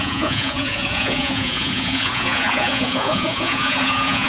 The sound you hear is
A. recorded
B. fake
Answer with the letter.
B